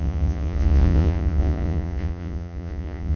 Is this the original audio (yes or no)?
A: no